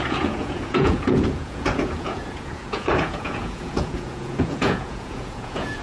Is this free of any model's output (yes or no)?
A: no